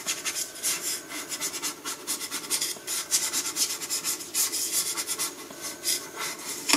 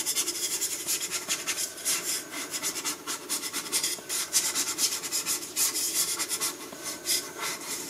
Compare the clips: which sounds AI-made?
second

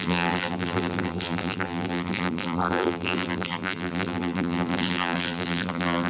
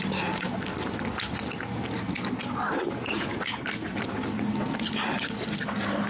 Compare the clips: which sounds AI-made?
first